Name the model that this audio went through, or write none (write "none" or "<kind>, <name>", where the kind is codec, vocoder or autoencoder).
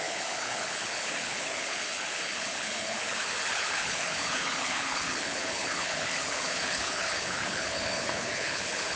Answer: codec, HILCodec